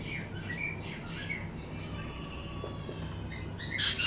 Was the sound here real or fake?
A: real